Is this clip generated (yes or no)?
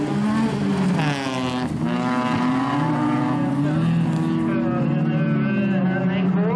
no